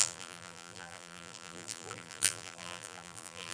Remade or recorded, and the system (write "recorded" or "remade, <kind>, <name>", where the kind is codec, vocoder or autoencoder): remade, vocoder, BigVGAN v2